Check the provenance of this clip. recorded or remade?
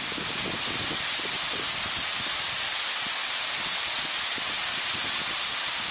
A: recorded